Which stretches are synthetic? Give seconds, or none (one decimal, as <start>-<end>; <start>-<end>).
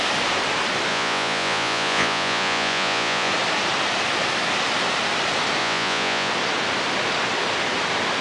0.9-3.3; 5.6-6.3